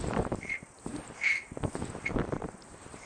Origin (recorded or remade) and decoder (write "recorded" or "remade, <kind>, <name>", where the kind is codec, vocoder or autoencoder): remade, vocoder, BigVGAN v2